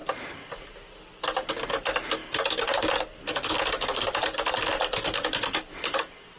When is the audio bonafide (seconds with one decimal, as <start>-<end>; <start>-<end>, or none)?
0.0-6.4